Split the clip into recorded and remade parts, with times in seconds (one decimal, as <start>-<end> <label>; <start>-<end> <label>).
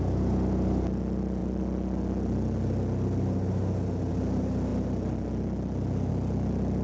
0.0-6.8 recorded